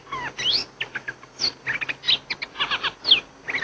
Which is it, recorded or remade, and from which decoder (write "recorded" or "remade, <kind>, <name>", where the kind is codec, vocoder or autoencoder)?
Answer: recorded